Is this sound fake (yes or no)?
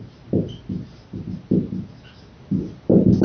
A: no